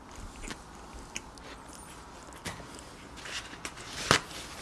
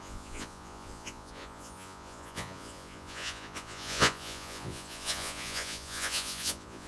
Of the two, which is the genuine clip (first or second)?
first